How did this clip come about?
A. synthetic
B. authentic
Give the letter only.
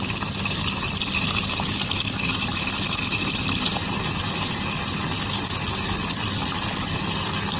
B